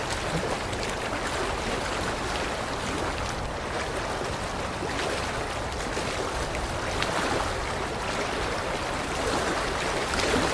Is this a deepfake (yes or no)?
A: no